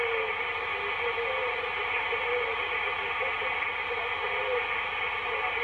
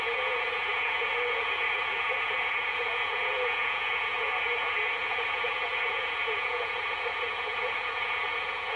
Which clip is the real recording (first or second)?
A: first